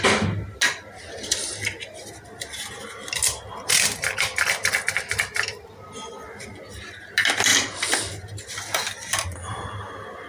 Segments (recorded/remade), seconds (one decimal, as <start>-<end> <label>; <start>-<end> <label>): 0.0-10.3 recorded